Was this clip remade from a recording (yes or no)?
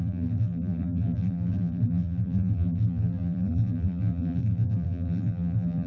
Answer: yes